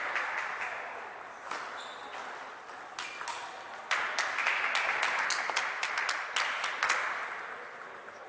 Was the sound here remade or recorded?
recorded